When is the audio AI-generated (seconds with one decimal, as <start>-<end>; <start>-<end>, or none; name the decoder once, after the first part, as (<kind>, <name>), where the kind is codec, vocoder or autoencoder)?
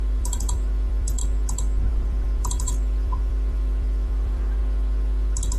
0.0-1.2 (vocoder, BigVGAN v2); 1.9-4.6